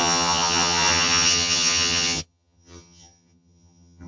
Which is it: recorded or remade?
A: remade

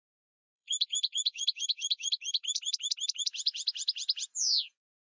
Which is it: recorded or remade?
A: remade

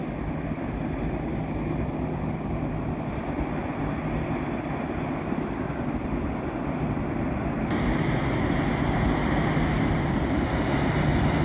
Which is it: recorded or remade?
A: recorded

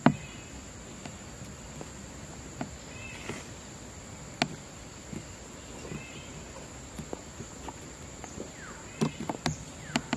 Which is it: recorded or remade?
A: recorded